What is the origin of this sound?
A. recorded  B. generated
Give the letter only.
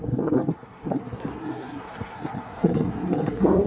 B